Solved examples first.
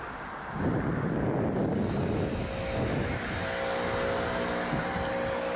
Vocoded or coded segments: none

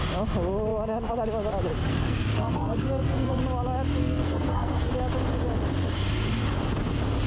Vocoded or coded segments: 1.9-3.4 (codec, SNAC); 4.0-4.9

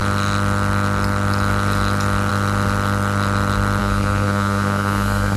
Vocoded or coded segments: 3.8-5.4 (codec, SNAC)

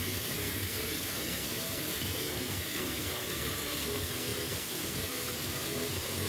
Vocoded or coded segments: 0.0-6.3 (codec, SNAC)

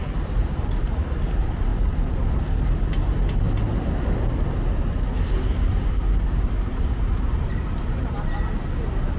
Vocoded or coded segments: none

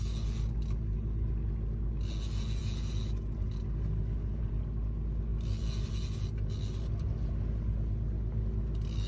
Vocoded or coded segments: none